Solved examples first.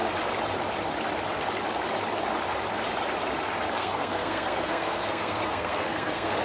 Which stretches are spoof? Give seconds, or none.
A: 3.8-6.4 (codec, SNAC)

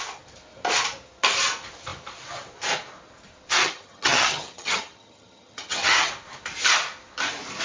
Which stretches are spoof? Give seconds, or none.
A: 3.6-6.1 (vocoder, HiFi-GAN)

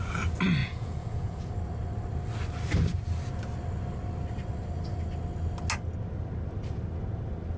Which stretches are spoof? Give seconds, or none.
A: 0.6-1.5 (vocoder, Vocos)